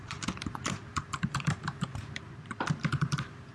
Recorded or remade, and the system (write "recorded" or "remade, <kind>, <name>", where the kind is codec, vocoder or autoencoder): remade, vocoder, BigVGAN v2